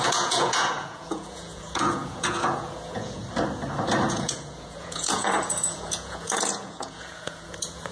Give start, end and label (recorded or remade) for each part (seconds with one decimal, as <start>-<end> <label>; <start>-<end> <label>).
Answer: 0.0-3.2 remade; 3.2-4.1 recorded; 4.1-7.9 remade